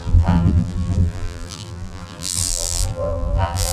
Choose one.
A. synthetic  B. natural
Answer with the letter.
A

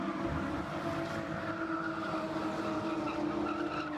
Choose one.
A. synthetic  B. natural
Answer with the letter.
B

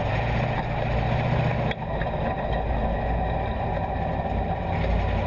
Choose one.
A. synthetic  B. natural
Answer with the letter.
B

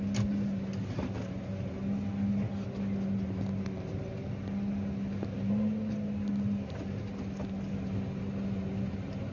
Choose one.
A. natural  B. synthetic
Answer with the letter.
A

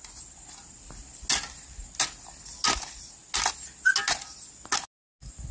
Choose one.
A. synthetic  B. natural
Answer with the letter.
B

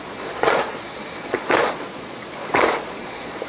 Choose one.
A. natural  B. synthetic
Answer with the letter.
B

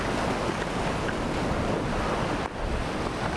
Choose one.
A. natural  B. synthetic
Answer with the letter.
A